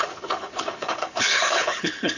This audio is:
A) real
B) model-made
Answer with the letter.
B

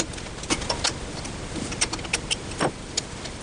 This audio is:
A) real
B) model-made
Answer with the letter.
A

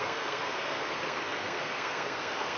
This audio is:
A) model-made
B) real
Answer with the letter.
A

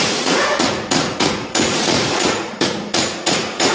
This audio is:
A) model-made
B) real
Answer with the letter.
A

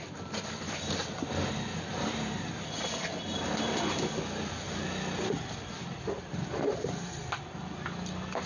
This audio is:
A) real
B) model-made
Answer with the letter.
B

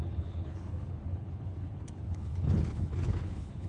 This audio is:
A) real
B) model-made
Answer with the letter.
B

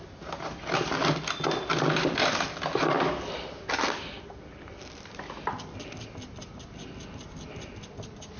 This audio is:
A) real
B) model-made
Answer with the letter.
A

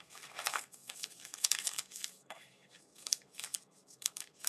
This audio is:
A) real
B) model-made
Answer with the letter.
B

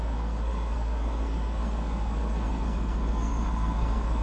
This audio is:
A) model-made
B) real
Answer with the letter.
A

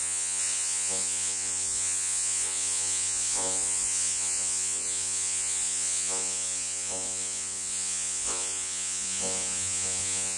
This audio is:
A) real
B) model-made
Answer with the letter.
B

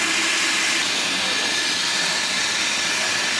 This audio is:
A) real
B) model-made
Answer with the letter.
A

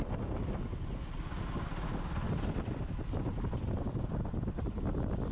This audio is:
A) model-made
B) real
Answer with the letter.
B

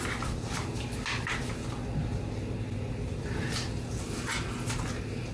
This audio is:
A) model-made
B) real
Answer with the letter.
B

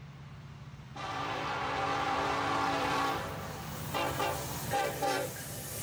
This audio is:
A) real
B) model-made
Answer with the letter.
B